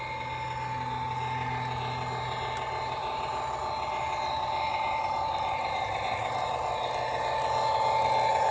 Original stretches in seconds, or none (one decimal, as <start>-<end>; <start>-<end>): 0.0-4.7; 6.5-8.5